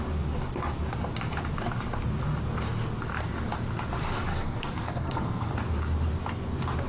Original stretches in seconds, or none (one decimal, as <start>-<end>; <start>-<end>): 0.0-4.3; 5.5-6.9